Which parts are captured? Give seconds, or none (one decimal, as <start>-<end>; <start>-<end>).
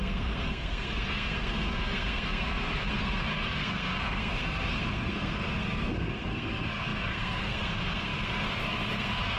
none